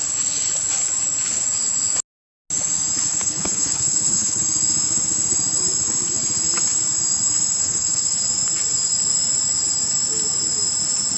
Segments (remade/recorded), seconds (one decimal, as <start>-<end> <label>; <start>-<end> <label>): 0.0-3.1 recorded; 3.1-4.4 remade; 4.4-7.6 recorded; 7.6-8.2 remade; 8.2-11.2 recorded

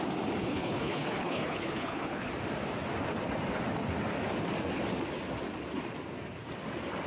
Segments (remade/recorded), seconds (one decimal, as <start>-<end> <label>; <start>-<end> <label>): 0.0-0.4 recorded; 0.4-2.3 remade; 2.3-7.1 recorded

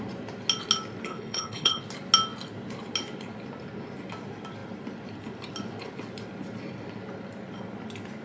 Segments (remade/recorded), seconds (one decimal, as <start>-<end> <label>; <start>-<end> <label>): 0.0-1.1 recorded; 1.1-1.8 remade; 1.8-8.2 recorded